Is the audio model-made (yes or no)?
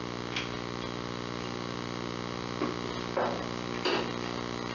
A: no